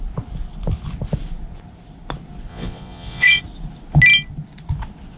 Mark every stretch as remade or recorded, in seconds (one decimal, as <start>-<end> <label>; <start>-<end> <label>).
0.0-2.5 recorded; 2.5-3.4 remade; 3.4-5.2 recorded